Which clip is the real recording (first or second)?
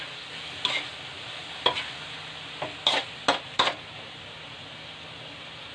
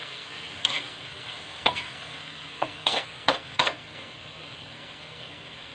first